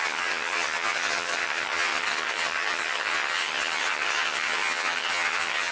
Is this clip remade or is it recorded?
remade